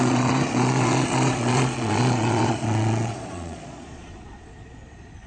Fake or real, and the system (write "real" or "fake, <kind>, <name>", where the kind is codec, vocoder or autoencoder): fake, vocoder, Vocos